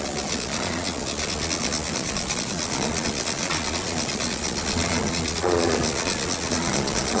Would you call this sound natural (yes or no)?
no